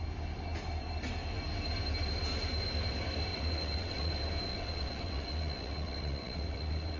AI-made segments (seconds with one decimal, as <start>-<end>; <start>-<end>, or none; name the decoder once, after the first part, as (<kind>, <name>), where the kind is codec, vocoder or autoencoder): 3.3-4.1 (vocoder, WaveNeXt); 4.5-7.0